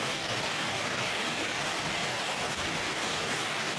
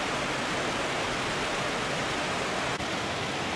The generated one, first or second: first